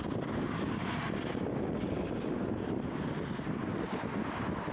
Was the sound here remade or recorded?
recorded